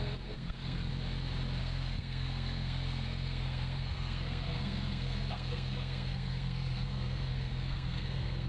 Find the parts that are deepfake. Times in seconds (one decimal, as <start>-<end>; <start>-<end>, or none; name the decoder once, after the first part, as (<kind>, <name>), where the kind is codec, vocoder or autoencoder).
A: 0.0-0.9 (codec, SNAC); 1.6-8.5